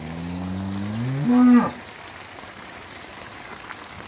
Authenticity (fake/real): real